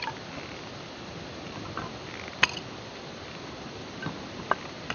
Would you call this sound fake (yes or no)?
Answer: no